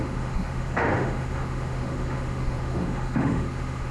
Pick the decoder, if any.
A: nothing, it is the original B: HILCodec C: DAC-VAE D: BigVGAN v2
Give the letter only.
C